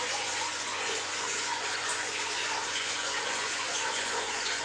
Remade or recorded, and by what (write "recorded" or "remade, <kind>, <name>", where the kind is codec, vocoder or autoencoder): remade, vocoder, Vocos